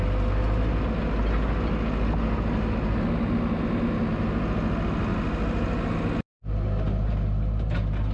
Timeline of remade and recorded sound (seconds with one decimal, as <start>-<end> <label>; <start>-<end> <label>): 0.0-8.1 recorded